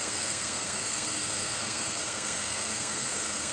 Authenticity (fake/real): fake